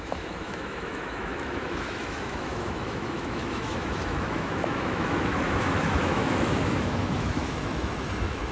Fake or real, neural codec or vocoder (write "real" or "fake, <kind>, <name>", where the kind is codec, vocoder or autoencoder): fake, autoencoder, DAC-VAE